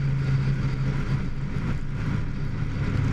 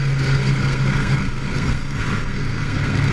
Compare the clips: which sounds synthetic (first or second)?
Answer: second